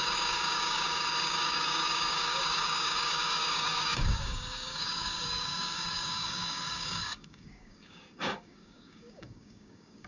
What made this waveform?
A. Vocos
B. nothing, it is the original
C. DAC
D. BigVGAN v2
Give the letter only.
C